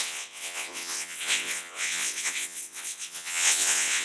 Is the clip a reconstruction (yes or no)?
yes